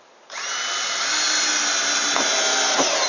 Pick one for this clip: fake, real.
real